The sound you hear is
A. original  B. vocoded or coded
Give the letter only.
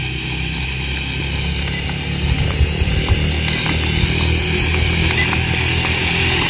A